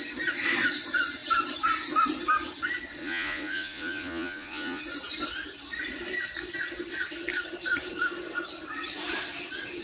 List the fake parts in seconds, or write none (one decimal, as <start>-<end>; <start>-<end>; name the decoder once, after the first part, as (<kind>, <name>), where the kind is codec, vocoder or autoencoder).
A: 3.0-4.8 (vocoder, Vocos)